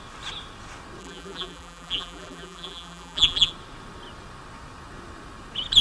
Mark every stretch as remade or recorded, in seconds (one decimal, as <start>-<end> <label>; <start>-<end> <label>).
0.0-1.0 recorded; 1.0-3.5 remade; 3.5-5.8 recorded